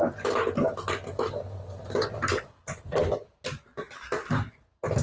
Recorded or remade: recorded